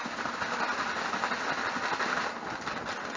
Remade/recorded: recorded